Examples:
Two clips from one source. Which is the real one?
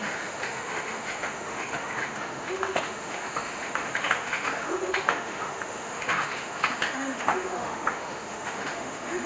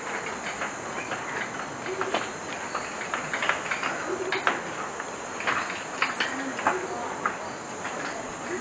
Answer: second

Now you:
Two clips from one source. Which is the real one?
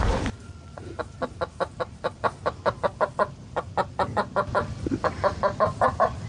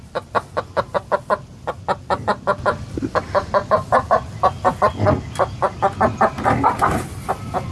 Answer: second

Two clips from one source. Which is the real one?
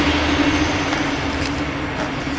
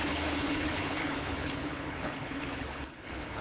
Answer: first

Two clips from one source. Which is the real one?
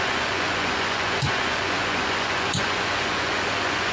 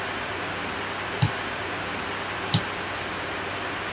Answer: second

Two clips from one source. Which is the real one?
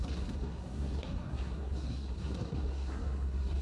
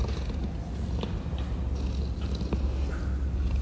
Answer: second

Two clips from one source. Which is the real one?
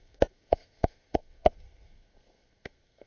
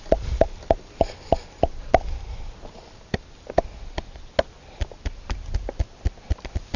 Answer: second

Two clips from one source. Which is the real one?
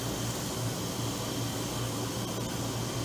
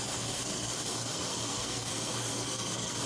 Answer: first